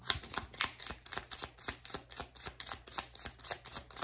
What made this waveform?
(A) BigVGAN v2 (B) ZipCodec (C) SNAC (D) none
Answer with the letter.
D